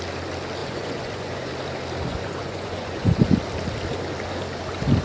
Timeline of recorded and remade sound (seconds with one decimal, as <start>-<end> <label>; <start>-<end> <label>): 0.0-0.6 recorded; 0.6-1.5 remade; 1.5-2.1 recorded; 2.1-3.2 remade; 3.2-5.0 recorded